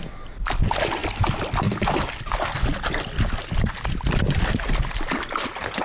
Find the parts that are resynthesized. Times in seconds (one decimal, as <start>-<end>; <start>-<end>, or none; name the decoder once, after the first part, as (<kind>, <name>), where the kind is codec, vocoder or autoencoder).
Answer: none